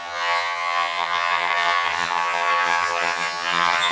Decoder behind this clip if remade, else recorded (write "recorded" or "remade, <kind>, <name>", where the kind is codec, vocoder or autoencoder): remade, vocoder, HiFi-GAN